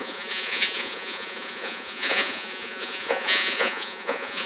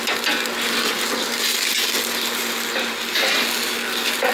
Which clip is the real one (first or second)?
second